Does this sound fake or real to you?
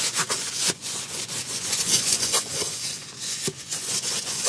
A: fake